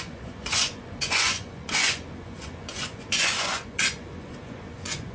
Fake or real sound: fake